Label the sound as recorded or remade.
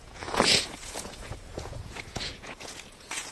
remade